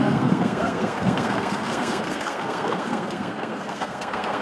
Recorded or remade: remade